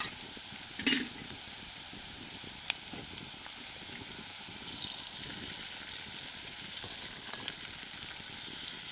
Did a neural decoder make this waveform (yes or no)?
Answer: no